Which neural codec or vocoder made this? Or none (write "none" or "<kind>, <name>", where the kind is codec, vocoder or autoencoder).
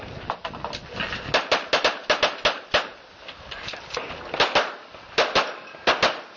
none